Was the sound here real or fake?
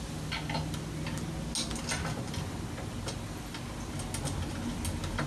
real